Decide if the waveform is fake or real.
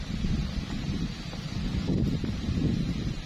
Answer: fake